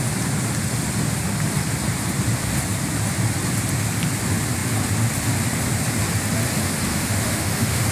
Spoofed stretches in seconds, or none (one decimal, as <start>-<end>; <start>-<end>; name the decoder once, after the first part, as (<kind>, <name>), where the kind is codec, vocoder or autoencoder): 6.9-7.9 (autoencoder, DAC-VAE)